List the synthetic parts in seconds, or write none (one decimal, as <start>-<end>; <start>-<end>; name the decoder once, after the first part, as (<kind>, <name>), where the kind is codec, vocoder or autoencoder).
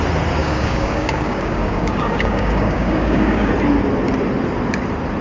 0.4-3.5 (codec, DAC)